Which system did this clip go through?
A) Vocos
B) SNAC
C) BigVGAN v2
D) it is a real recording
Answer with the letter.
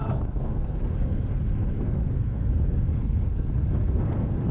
B